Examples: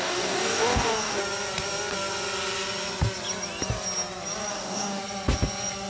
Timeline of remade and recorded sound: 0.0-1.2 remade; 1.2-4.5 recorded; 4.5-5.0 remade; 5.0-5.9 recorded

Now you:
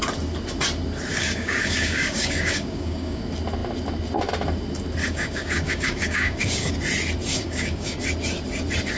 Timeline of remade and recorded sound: 0.0-1.1 recorded; 1.1-3.2 remade; 3.2-5.0 recorded; 5.0-6.7 remade; 6.7-7.3 recorded; 7.3-8.0 remade; 8.0-9.0 recorded

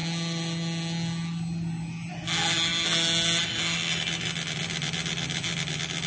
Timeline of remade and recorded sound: 0.0-6.1 recorded

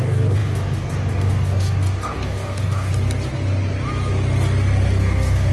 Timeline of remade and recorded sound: 0.0-2.9 remade; 2.9-5.0 recorded; 5.0-5.5 remade